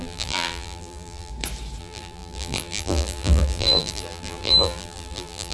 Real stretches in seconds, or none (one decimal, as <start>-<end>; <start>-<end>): 1.3-1.8